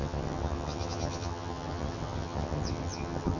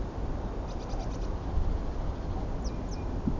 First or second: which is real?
second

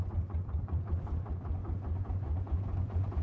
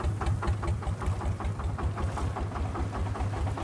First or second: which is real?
second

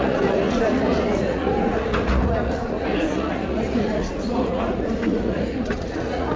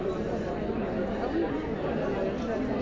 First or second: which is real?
second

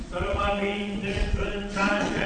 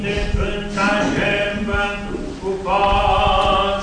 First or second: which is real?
second